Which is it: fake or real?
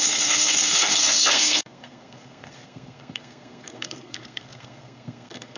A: fake